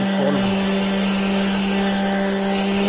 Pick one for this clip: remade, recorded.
recorded